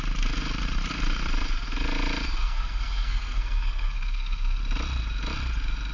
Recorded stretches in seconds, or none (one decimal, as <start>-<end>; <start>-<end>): 0.0-2.4; 4.6-5.9